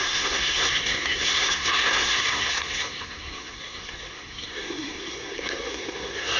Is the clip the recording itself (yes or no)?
no